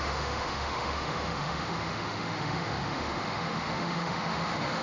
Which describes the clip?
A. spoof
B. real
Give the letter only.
A